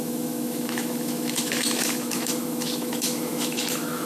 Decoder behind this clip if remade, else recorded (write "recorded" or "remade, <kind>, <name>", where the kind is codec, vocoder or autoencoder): remade, autoencoder, DAC-VAE